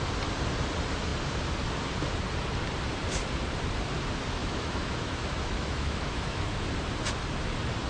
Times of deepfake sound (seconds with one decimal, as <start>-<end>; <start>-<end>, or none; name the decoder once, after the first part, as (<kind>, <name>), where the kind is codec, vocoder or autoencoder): 4.4-6.7 (autoencoder, DAC-VAE)